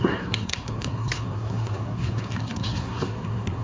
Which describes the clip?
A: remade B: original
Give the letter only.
A